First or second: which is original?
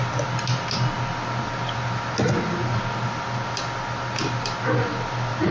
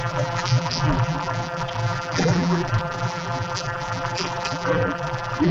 first